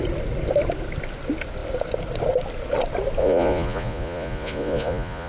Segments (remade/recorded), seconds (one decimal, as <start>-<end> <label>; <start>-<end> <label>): 0.0-3.2 recorded; 3.2-5.3 remade